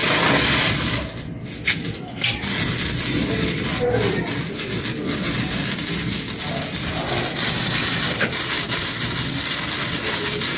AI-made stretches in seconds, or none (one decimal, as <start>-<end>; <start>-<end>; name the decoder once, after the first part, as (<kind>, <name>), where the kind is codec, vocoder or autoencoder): 0.0-0.7 (vocoder, BigVGAN v2)